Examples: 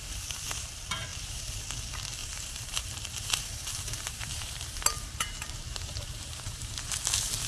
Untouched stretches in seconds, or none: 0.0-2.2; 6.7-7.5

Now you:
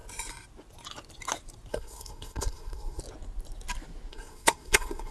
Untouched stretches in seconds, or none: 0.0-1.7; 3.0-4.1

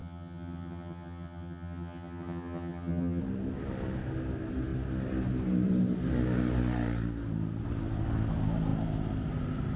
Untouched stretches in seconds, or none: 3.2-9.8